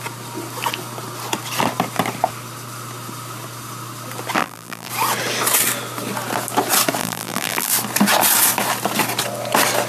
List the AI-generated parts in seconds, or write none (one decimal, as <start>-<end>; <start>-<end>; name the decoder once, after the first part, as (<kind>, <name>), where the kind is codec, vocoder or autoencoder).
4.4-4.9 (vocoder, BigVGAN v2); 7.0-7.7